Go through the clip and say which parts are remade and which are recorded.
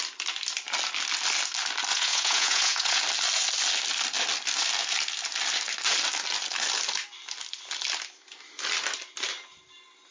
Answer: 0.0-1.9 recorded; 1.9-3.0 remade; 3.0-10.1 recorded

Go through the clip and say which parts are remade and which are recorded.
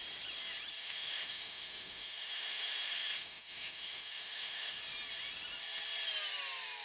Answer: 0.0-0.8 recorded; 0.8-4.8 remade; 4.8-6.8 recorded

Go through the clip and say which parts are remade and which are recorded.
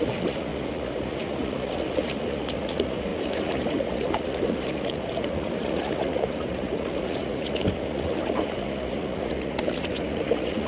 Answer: 0.0-10.7 remade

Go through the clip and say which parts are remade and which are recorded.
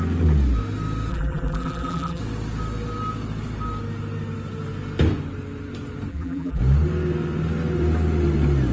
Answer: 0.0-1.1 recorded; 1.1-2.2 remade; 2.2-6.1 recorded; 6.1-6.6 remade; 6.6-8.7 recorded